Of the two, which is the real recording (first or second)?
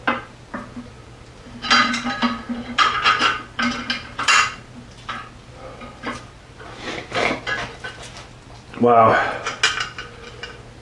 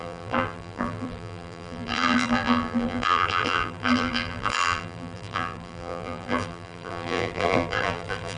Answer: first